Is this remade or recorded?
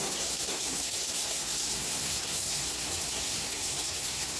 remade